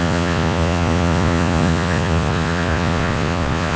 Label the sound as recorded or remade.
remade